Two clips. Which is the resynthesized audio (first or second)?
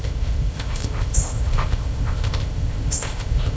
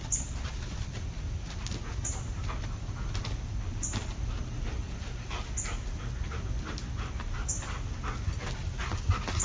first